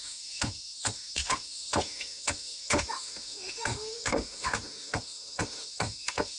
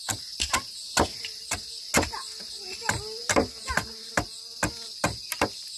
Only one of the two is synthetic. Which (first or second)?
first